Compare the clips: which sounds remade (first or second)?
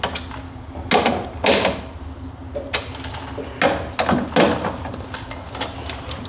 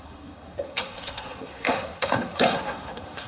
second